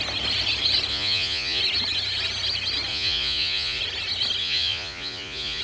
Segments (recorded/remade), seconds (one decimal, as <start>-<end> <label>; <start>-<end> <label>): 0.0-0.9 recorded; 0.9-1.6 remade; 1.6-2.9 recorded; 2.9-3.8 remade; 3.8-4.4 recorded; 4.4-5.6 remade